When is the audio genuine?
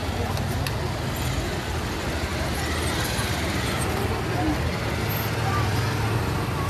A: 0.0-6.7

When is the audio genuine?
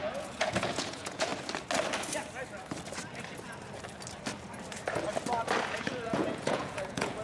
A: 1.3-5.6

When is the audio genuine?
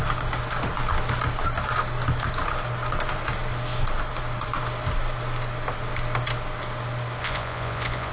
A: 0.0-7.2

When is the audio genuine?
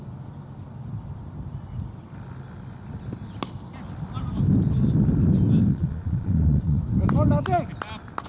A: 0.0-5.7; 6.8-8.3